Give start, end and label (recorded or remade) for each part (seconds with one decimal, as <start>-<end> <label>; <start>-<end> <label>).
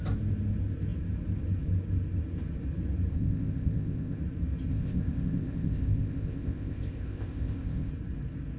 0.0-3.1 recorded; 3.1-4.2 remade; 4.2-4.7 recorded; 4.7-7.9 remade; 7.9-8.6 recorded